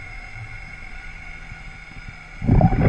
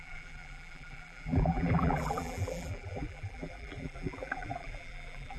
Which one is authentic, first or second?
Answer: first